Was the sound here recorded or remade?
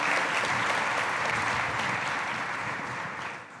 recorded